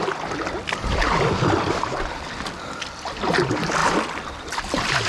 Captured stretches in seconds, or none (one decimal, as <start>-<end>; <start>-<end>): 0.0-5.1